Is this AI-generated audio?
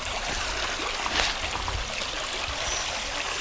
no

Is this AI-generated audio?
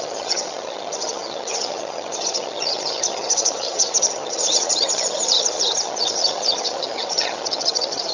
yes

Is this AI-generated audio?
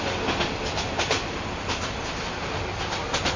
no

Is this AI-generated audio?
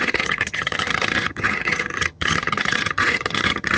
yes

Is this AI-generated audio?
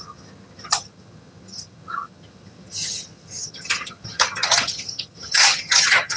yes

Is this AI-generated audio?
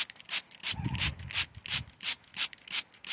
no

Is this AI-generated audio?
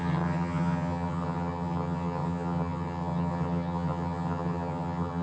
yes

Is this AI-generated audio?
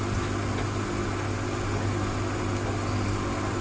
no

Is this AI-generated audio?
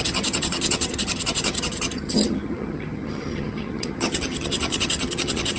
yes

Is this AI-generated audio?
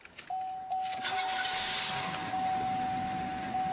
no